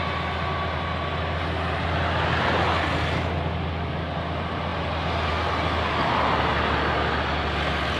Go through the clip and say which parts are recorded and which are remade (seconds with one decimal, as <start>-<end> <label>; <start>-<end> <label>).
0.0-8.0 recorded